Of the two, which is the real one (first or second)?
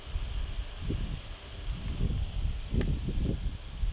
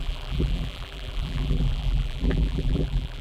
first